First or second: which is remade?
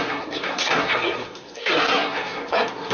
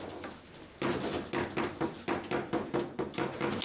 first